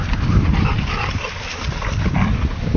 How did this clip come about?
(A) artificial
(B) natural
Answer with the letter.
B